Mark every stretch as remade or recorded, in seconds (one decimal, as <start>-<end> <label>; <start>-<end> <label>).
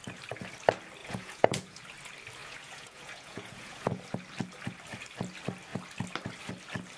0.0-1.0 recorded; 1.0-1.8 remade; 1.8-2.4 recorded; 2.4-4.0 remade; 4.0-7.0 recorded